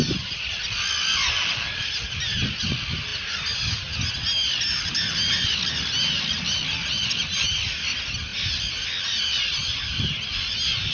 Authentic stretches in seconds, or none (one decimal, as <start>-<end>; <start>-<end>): 0.0-10.9